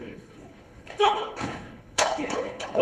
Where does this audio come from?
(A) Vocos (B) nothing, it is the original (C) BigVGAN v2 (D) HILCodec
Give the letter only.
D